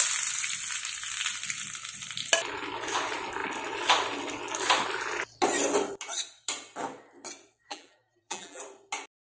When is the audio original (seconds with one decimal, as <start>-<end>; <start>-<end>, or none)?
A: 0.0-7.7; 8.6-9.4